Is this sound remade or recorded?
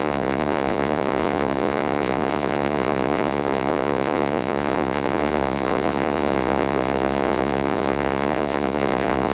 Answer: remade